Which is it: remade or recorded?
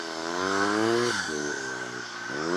remade